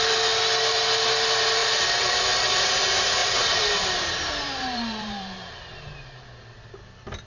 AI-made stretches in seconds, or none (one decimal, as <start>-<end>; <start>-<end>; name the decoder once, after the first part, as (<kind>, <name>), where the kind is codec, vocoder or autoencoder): 1.6-2.1 (vocoder, BigVGAN v2); 3.2-5.6